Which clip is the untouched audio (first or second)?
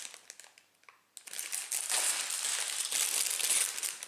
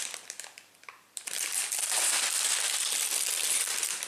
first